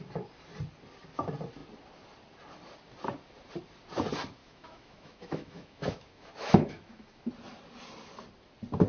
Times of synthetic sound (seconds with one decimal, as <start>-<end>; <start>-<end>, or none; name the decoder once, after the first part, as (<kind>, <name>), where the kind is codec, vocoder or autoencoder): 4.4-7.3 (autoencoder, DAC-VAE)

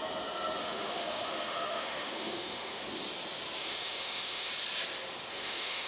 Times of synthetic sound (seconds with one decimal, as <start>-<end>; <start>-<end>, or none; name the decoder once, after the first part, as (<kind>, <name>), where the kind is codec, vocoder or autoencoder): 0.6-2.8 (autoencoder, DAC-VAE); 3.6-4.5; 5.3-5.9